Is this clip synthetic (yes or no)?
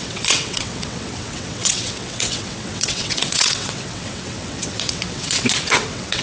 yes